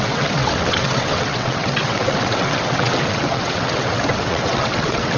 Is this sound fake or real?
fake